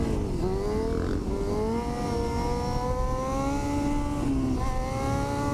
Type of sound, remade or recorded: recorded